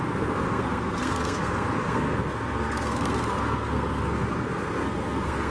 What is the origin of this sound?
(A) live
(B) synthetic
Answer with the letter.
B